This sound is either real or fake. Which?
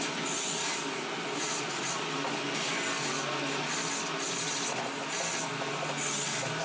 real